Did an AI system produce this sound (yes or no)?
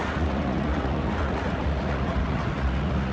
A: yes